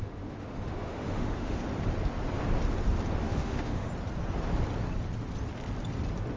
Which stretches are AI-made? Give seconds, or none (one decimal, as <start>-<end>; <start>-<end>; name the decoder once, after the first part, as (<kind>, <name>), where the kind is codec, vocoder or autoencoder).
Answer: 0.0-1.6 (autoencoder, DAC-VAE); 3.2-3.9